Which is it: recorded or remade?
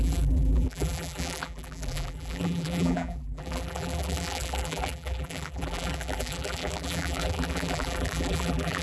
remade